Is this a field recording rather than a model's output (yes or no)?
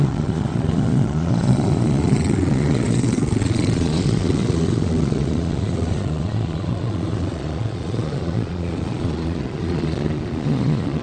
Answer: no